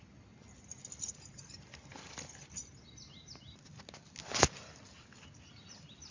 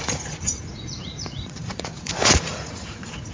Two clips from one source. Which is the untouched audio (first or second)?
first